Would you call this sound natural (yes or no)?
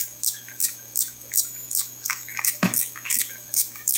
no